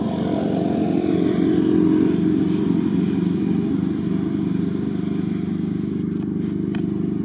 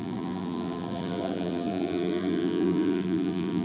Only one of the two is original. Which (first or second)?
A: first